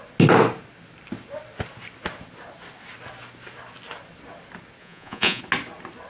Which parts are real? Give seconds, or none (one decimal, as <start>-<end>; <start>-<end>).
0.0-4.8; 5.4-6.1